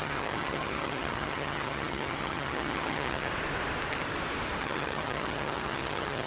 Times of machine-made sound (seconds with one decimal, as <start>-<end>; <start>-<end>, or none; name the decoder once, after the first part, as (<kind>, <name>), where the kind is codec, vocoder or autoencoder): 0.0-3.3 (vocoder, HiFi-GAN); 4.6-6.3